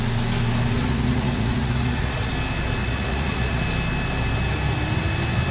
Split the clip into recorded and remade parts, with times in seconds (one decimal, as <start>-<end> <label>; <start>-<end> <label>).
0.0-0.8 recorded; 0.8-2.3 remade; 2.3-2.8 recorded; 2.8-3.6 remade; 3.6-5.5 recorded